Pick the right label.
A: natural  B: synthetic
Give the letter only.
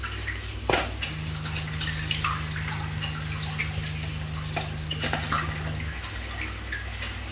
A